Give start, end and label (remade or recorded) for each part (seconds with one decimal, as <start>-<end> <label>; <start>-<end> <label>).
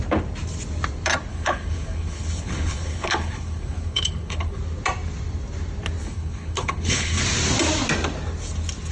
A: 0.0-1.3 recorded; 1.3-4.6 remade; 4.6-6.0 recorded; 6.0-7.2 remade; 7.2-8.9 recorded